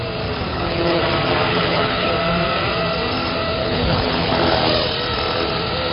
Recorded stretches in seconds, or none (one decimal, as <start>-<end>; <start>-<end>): 0.0-0.5; 1.0-1.5; 2.1-3.6; 4.3-5.9